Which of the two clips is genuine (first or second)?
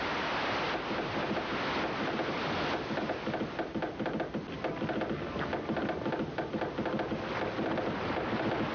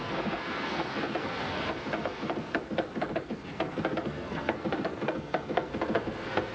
first